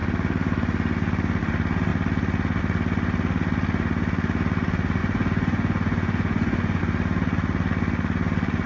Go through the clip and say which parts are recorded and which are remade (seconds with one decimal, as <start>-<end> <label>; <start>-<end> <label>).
0.0-5.0 recorded; 5.0-6.8 remade; 6.8-8.7 recorded